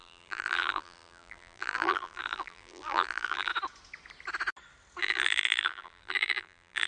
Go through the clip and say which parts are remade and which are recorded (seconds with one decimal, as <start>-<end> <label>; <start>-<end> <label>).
0.0-3.5 remade; 3.5-5.0 recorded; 5.0-6.9 remade